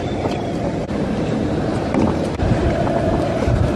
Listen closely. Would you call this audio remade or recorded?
remade